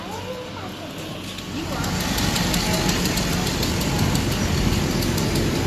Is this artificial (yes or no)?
no